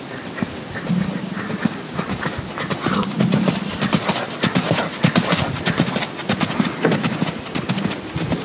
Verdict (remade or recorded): recorded